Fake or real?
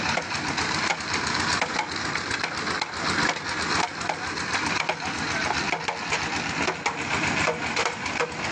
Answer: real